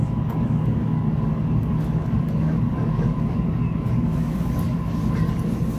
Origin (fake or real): fake